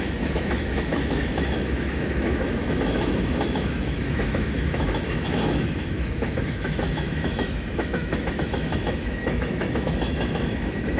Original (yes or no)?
no